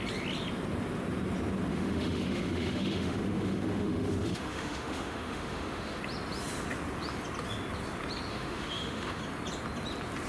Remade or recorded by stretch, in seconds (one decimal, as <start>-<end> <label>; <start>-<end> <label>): 0.0-1.7 recorded; 1.7-6.0 remade; 6.0-8.3 recorded; 8.3-9.2 remade; 9.2-10.3 recorded